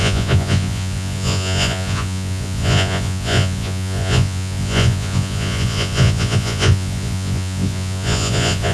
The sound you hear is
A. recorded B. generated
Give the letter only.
B